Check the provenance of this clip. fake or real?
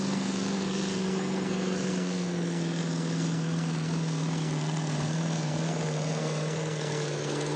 fake